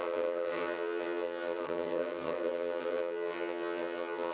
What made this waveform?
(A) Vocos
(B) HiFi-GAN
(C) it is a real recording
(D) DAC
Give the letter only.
B